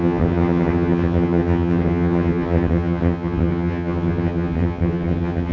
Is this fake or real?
fake